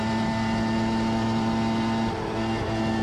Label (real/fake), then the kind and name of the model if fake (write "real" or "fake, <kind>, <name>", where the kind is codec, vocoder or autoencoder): real